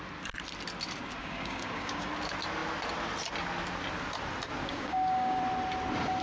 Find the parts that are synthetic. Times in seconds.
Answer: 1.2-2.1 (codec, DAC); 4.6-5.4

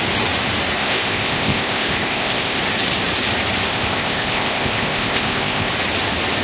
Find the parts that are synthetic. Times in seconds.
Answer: 0.8-2.6 (codec, ZipCodec); 3.7-5.7

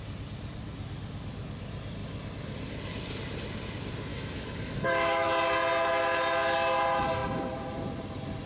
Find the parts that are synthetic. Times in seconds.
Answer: 4.1-5.3 (autoencoder, DAC-VAE)

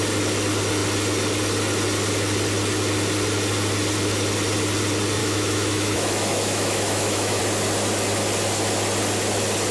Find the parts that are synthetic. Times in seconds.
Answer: 5.2-7.4 (autoencoder, DAC-VAE)

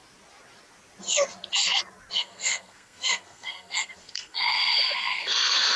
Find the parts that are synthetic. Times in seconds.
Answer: 2.2-5.8 (codec, SNAC)

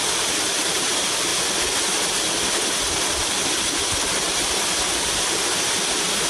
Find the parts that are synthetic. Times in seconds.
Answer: none

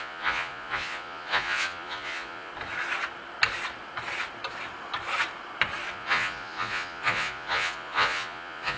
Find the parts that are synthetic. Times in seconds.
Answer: 0.0-2.5 (vocoder, Vocos); 5.9-8.8